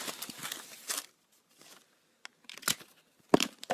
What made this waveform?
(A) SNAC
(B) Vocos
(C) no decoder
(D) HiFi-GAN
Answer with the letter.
C